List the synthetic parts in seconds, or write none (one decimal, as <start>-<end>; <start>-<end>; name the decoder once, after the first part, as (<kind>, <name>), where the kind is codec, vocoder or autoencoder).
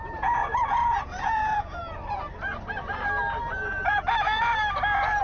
0.0-1.8 (vocoder, Vocos); 3.4-4.5